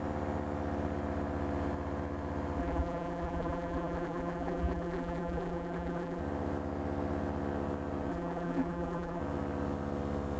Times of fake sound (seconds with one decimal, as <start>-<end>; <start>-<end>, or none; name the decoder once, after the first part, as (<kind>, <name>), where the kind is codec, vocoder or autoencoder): 2.6-6.2 (vocoder, BigVGAN v2); 8.1-9.2